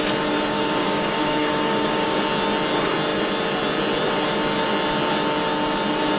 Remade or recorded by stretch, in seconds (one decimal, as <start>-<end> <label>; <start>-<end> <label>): 0.0-0.5 recorded; 0.5-2.2 remade; 2.2-6.2 recorded